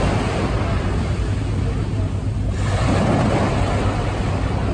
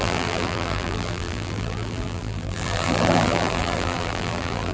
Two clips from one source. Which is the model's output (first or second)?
second